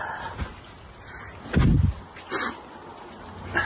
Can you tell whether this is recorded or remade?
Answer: recorded